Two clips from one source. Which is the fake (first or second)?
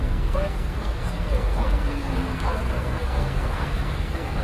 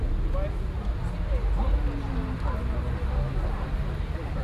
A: first